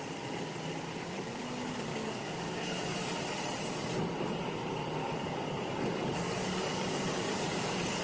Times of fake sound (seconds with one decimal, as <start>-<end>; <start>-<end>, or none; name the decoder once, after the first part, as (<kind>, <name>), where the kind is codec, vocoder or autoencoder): 1.9-3.2 (codec, DAC); 5.0-8.0